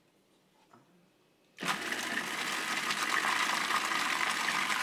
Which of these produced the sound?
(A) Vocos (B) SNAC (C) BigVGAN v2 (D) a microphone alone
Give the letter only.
D